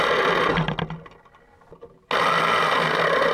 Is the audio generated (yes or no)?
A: no